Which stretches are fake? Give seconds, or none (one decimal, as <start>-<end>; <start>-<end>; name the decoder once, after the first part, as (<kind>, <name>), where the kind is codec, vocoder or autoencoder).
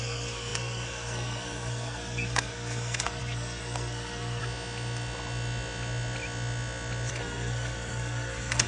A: 0.0-4.4 (codec, SNAC); 7.1-8.7